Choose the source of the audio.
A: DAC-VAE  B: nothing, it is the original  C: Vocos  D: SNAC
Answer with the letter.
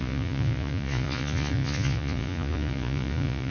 C